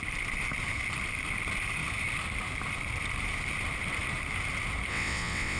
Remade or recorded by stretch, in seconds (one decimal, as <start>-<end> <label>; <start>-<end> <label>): 0.0-4.9 recorded; 4.9-5.6 remade